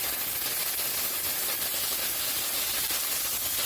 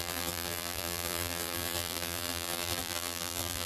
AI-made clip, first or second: second